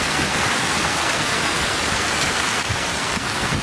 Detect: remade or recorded remade